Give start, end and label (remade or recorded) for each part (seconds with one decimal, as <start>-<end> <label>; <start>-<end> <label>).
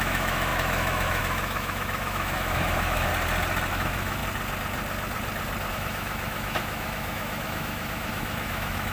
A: 0.0-3.1 remade; 3.1-3.7 recorded; 3.7-4.2 remade; 4.2-5.7 recorded; 5.7-8.9 remade